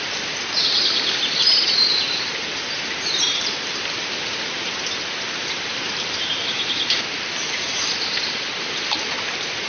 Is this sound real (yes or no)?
no